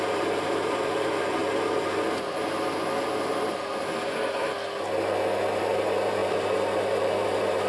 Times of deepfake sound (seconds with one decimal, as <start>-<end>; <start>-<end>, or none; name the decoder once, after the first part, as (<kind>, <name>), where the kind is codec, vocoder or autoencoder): 0.0-1.4 (vocoder, BigVGAN v2); 5.6-7.7